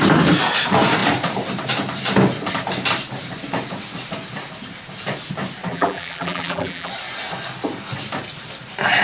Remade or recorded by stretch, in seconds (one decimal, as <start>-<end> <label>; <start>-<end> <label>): 0.0-5.7 recorded; 5.7-6.9 remade; 6.9-9.0 recorded